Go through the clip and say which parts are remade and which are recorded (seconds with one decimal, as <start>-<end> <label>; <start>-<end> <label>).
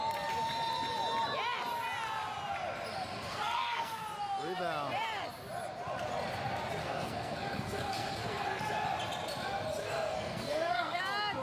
0.0-3.3 recorded; 3.3-4.0 remade; 4.0-6.8 recorded; 6.8-8.6 remade; 8.6-9.8 recorded; 9.8-11.0 remade; 11.0-11.4 recorded